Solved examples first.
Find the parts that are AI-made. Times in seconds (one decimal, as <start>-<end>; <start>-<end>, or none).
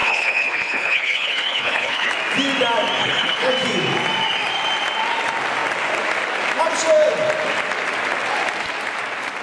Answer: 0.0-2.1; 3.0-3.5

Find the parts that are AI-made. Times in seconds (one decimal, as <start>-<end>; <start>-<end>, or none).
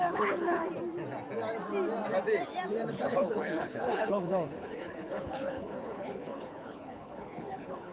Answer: 0.0-0.7; 2.9-7.9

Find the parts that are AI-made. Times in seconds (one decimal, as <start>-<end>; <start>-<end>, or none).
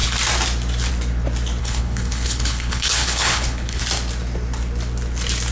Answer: 1.6-3.8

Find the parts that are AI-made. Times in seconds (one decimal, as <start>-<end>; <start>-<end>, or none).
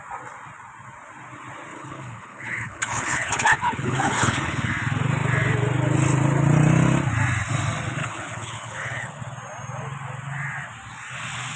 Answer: 1.7-4.7; 8.0-9.2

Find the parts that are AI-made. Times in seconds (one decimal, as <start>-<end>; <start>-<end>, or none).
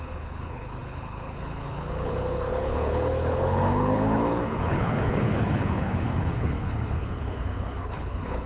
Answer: 0.0-8.5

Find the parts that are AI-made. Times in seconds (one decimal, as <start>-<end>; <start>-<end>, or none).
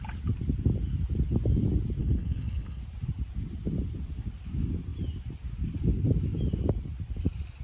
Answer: 2.0-2.8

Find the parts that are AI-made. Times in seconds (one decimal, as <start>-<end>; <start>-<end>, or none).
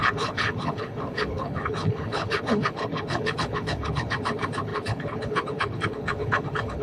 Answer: 0.0-6.8